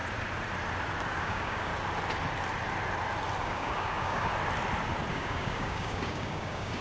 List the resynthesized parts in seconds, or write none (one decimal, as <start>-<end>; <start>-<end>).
1.2-1.7; 3.4-4.3; 5.1-6.8